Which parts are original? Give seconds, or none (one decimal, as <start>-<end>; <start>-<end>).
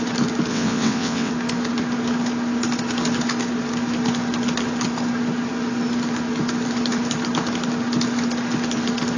0.0-0.5; 1.3-9.2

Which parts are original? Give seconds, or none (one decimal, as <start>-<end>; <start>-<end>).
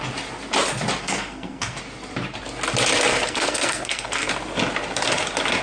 0.0-1.0; 1.8-3.1; 4.3-5.6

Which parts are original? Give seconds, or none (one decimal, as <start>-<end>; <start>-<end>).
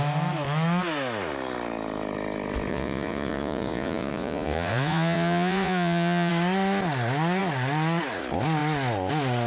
0.0-2.7; 6.3-9.5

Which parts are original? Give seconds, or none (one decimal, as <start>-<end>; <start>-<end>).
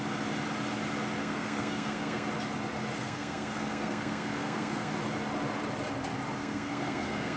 0.0-1.2; 2.3-3.0; 4.9-6.4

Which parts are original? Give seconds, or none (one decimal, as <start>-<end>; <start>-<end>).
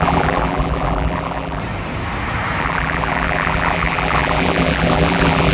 1.6-2.6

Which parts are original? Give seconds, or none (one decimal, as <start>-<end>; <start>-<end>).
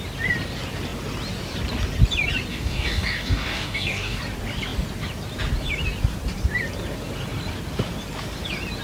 0.0-2.5; 4.2-8.8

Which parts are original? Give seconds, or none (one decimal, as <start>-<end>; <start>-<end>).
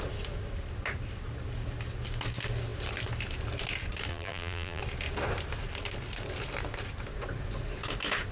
0.0-4.1; 4.8-8.3